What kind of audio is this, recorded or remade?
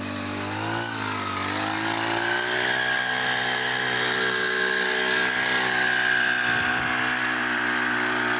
recorded